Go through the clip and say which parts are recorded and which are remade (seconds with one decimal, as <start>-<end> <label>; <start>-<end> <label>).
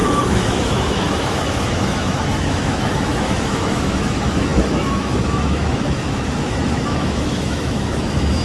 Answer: 0.0-8.4 remade